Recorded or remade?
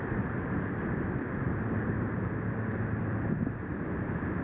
recorded